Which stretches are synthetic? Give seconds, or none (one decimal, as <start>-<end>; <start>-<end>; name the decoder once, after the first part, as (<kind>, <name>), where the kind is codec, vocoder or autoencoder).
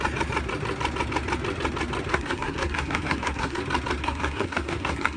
2.1-3.6 (codec, SNAC); 4.0-5.2